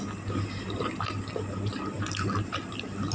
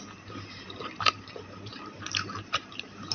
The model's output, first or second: second